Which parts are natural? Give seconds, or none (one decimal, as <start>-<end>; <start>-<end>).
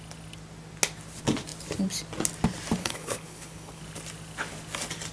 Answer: 0.0-2.8; 3.8-5.1